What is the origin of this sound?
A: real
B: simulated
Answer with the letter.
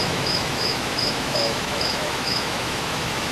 B